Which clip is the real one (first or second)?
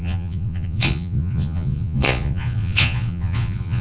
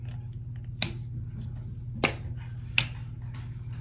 second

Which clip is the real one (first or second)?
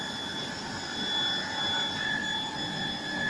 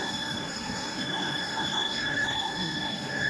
first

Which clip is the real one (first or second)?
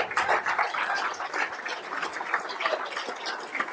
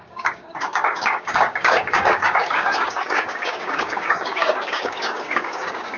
first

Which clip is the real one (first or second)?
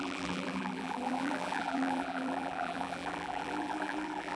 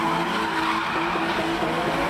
second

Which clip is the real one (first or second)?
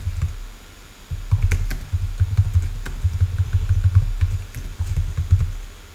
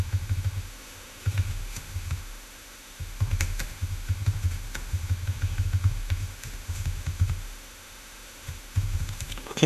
first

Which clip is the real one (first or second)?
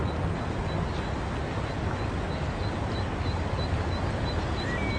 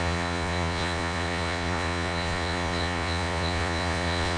first